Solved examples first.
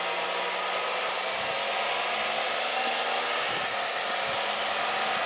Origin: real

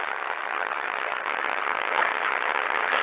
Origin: fake